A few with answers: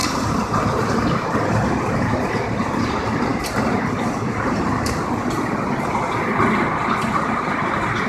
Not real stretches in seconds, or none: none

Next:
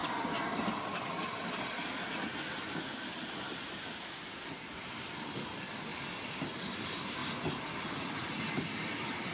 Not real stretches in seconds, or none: 4.1-5.9; 6.6-7.2; 7.8-9.3

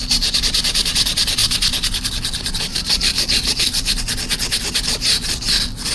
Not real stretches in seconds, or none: 0.0-5.9

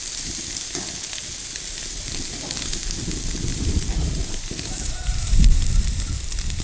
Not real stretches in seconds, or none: 3.5-6.1